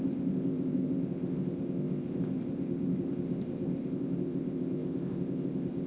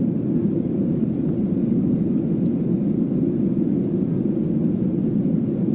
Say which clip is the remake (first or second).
first